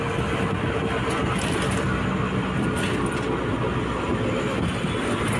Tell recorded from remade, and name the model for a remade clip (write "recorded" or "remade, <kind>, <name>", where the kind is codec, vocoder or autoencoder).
recorded